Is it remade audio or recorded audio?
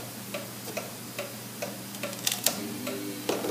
recorded